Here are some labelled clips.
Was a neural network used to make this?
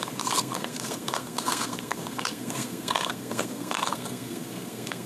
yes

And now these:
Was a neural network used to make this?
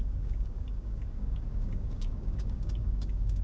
yes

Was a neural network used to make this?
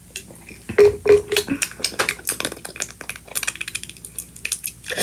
no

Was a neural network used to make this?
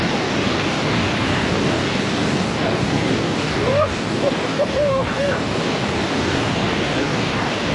yes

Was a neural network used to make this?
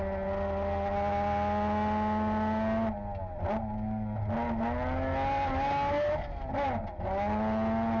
no